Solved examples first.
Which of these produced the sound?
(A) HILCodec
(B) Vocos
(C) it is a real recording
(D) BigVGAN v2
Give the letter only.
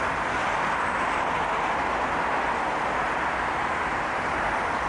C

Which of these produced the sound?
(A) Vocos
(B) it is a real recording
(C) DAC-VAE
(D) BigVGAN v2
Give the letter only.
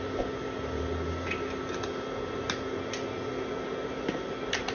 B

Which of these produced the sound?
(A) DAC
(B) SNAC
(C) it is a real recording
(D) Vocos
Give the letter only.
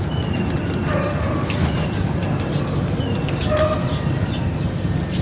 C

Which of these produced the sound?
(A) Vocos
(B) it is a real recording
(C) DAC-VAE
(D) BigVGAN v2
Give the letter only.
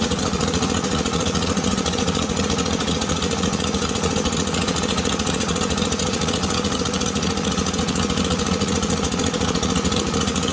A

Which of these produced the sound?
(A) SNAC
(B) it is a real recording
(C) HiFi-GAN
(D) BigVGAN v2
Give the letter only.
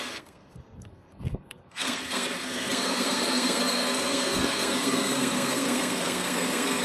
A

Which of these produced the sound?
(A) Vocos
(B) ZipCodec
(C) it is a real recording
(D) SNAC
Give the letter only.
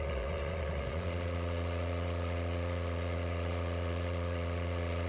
A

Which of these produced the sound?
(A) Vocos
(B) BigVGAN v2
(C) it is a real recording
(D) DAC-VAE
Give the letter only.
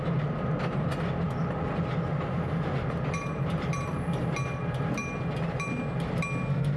C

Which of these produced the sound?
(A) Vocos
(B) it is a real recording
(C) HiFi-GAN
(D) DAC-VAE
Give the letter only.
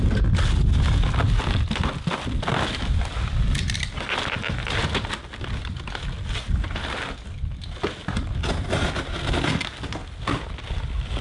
B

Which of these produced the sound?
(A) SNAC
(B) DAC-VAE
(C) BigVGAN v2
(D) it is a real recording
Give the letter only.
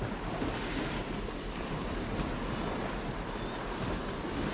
C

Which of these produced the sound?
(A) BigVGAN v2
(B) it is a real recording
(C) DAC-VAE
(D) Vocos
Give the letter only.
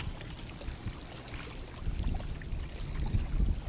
B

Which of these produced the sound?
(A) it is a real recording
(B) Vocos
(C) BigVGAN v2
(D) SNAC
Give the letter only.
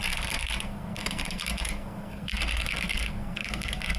D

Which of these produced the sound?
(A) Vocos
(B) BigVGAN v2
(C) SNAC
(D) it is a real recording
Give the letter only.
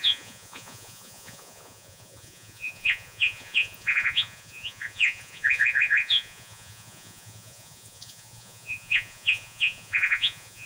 A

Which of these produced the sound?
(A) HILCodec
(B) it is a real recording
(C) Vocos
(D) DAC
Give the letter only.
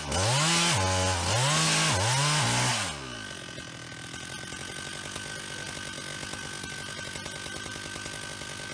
B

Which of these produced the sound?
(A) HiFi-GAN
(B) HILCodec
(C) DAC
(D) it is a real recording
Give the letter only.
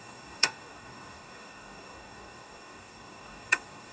C